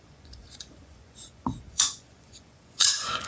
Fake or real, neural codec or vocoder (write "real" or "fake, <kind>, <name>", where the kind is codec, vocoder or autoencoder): fake, vocoder, Vocos